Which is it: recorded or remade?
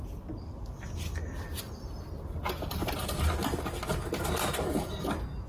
recorded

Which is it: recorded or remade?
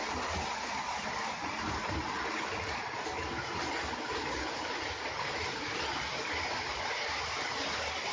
recorded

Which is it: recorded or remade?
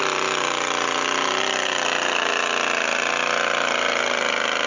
recorded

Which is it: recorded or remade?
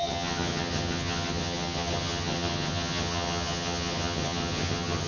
remade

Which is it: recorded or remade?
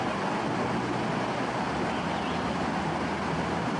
recorded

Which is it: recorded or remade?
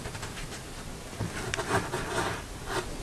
recorded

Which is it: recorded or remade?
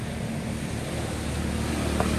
recorded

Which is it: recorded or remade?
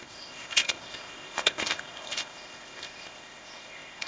remade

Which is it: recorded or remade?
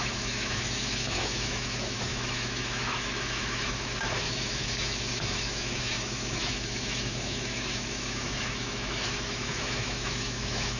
remade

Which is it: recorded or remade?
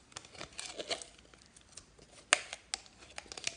recorded